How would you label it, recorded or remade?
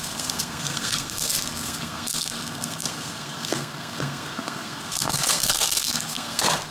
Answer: remade